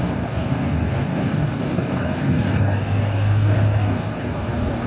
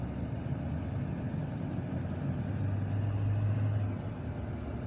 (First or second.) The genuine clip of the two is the second